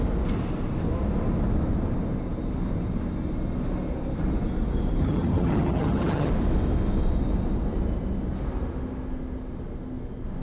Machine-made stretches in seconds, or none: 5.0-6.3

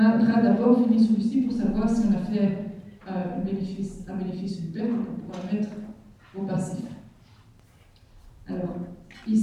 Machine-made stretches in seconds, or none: none

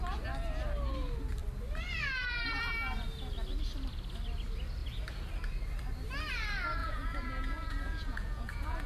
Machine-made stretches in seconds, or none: 6.8-8.9

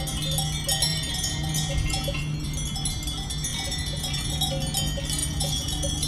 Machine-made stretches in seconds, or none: 0.9-2.2; 3.5-4.4; 5.2-6.1

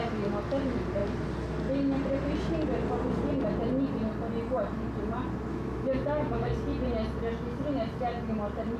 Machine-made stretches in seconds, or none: 5.5-6.5

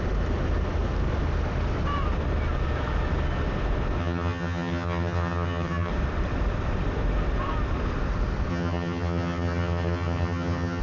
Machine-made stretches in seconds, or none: 4.0-5.9; 8.5-10.8

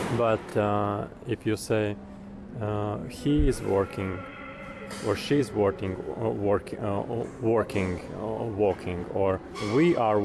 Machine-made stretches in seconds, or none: 3.0-5.4

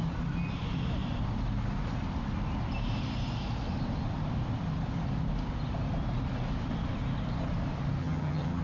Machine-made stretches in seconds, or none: 8.0-8.6